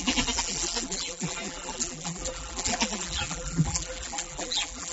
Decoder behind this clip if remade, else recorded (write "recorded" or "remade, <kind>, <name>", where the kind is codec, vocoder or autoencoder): remade, vocoder, BigVGAN v2